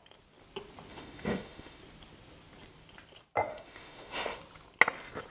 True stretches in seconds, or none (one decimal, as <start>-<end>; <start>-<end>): 0.0-0.9; 1.8-3.5; 4.4-5.3